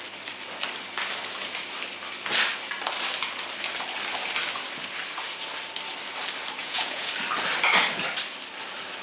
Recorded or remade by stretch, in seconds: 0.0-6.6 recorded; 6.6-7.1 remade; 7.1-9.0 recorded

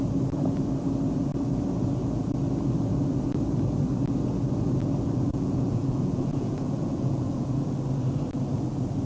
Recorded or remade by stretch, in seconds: 0.0-5.3 recorded; 5.3-7.7 remade; 7.7-9.1 recorded

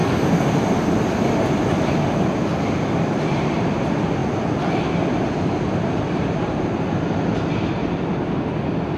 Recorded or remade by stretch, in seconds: 0.0-9.0 recorded

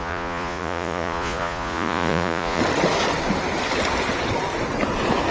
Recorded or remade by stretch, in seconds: 0.0-2.6 remade; 2.6-5.3 recorded

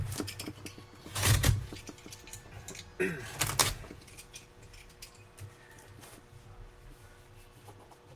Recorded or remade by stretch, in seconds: 0.0-1.1 recorded; 1.1-1.8 remade; 1.8-3.6 recorded; 3.6-4.6 remade; 4.6-8.2 recorded

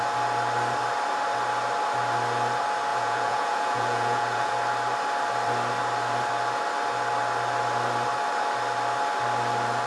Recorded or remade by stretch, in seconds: 0.0-2.9 recorded; 2.9-4.5 remade; 4.5-9.9 recorded

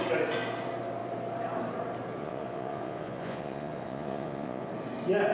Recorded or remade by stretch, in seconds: 0.0-2.2 recorded; 2.2-4.7 remade; 4.7-5.3 recorded

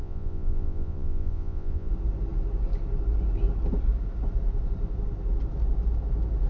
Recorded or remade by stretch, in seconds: 0.0-1.9 remade; 1.9-6.5 recorded